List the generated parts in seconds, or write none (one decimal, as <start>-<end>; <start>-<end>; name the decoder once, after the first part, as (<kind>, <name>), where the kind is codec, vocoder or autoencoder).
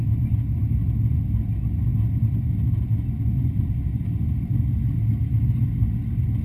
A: none